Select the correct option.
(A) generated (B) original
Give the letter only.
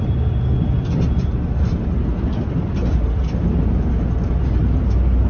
B